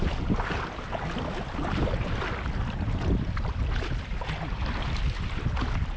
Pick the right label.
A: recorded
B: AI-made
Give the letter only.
A